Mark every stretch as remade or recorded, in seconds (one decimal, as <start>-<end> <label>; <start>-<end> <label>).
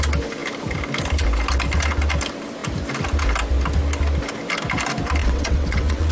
0.0-5.2 recorded; 5.2-6.1 remade